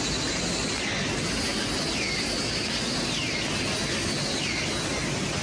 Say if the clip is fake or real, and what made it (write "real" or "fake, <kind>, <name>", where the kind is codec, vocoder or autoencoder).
real